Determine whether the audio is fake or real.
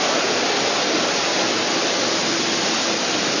real